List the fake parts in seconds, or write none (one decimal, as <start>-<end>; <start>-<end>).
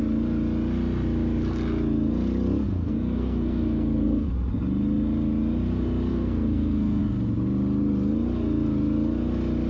2.7-4.3; 6.1-7.0